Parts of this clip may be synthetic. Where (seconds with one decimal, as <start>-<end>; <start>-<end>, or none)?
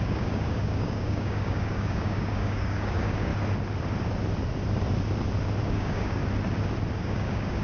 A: 0.0-3.3; 5.6-6.2; 6.9-7.6